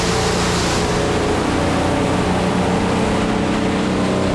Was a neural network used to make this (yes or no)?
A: no